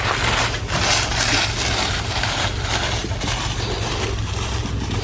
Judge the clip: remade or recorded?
recorded